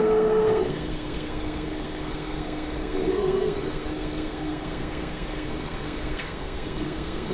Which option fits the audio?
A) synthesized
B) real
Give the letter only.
A